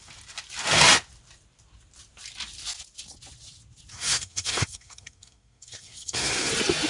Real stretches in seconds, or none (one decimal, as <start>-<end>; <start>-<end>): 0.0-3.9; 6.5-6.9